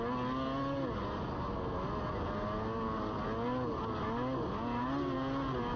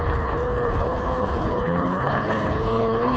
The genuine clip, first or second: first